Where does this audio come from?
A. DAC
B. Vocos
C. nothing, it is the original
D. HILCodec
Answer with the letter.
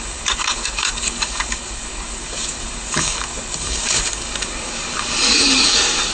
A